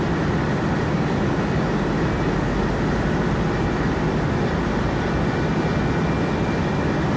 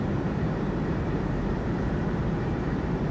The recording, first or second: first